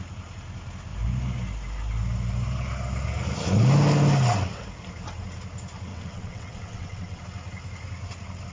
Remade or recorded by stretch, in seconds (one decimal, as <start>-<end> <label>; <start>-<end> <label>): 0.0-5.9 recorded; 5.9-7.2 remade; 7.2-8.5 recorded